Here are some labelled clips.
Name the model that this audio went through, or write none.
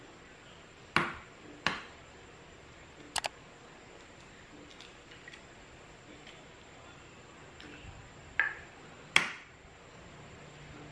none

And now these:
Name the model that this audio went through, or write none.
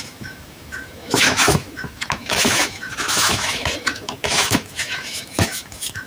autoencoder, DAC-VAE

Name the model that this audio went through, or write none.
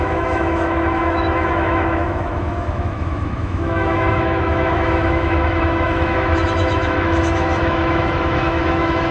autoencoder, DAC-VAE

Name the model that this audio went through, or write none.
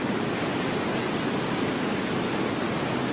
none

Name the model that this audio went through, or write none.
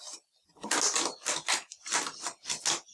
none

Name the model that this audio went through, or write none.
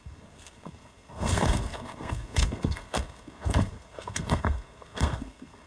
codec, SNAC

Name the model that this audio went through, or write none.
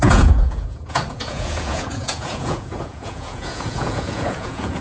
vocoder, Vocos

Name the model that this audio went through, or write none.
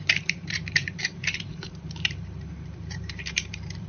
vocoder, BigVGAN v2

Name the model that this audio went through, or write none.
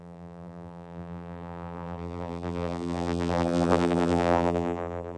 vocoder, BigVGAN v2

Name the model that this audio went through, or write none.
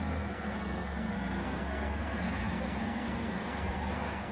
codec, SNAC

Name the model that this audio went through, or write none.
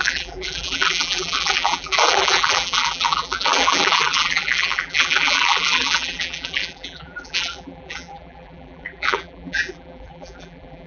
vocoder, BigVGAN v2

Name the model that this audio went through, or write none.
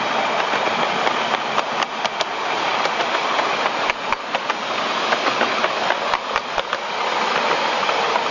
none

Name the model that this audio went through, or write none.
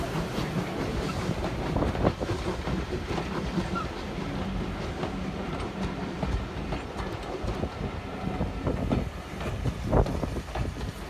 none